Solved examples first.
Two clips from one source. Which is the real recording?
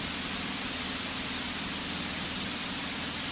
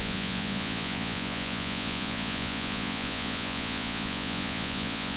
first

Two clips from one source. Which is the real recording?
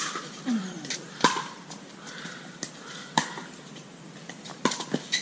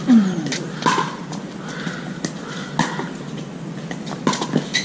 second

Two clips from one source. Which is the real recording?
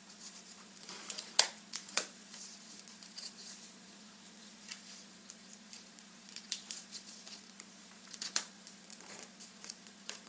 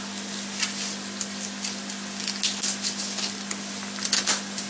second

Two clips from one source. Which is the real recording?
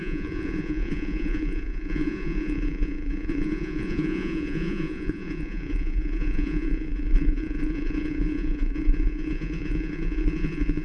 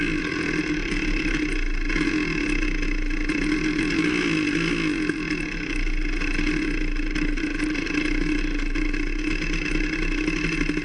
second